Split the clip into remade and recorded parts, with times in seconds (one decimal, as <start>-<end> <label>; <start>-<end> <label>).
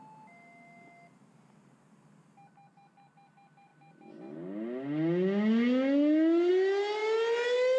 0.0-7.8 recorded